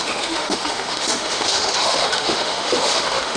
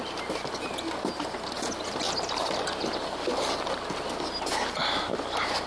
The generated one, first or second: first